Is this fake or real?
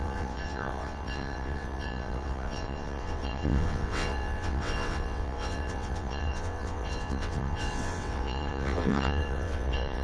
fake